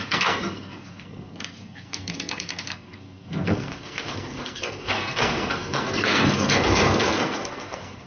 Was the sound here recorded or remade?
remade